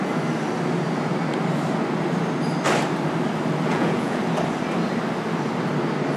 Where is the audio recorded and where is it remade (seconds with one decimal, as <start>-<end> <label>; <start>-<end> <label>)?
0.0-3.7 recorded; 3.7-4.2 remade; 4.2-6.2 recorded

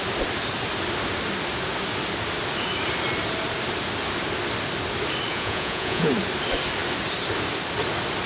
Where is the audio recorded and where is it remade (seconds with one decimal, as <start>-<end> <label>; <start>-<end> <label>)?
0.0-5.3 recorded; 5.3-6.1 remade; 6.1-8.3 recorded

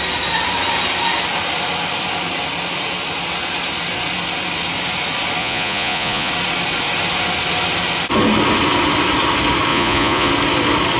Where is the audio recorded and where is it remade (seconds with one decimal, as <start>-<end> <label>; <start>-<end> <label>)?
0.0-5.4 recorded; 5.4-6.3 remade; 6.3-9.7 recorded; 9.7-10.3 remade; 10.3-11.0 recorded

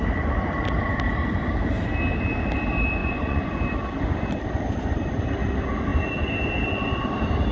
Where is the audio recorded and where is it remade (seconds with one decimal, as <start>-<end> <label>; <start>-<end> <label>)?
0.0-3.0 recorded; 3.0-3.5 remade; 3.5-7.5 recorded

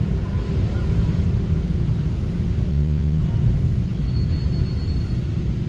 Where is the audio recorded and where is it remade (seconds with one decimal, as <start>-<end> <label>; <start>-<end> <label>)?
0.0-2.7 recorded; 2.7-3.2 remade; 3.2-5.7 recorded

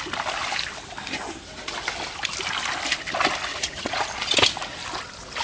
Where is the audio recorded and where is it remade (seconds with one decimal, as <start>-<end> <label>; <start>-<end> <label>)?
0.0-3.5 recorded; 3.5-4.0 remade; 4.0-5.4 recorded